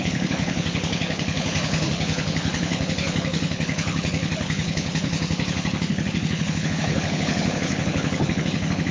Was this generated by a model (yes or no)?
yes